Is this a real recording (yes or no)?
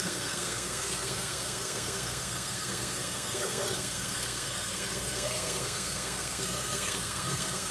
no